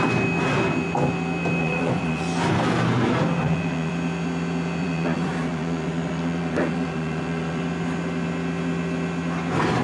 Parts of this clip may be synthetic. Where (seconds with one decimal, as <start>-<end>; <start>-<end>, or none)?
1.6-2.3; 3.4-3.9; 4.8-7.6